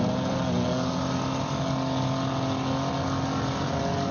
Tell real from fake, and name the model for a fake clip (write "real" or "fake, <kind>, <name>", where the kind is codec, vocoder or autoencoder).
real